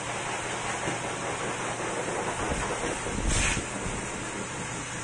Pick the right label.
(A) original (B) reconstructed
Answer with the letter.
A